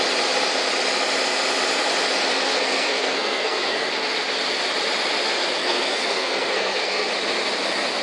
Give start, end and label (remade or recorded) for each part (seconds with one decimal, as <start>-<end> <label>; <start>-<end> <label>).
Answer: 0.0-2.3 recorded; 2.3-3.9 remade; 3.9-5.6 recorded; 5.6-7.1 remade; 7.1-8.0 recorded